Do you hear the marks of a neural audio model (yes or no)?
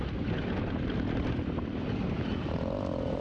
no